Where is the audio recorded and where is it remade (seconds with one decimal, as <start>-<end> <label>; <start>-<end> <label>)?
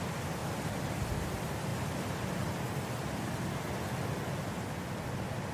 0.0-0.4 remade; 0.4-1.1 recorded; 1.1-1.7 remade; 1.7-5.0 recorded; 5.0-5.5 remade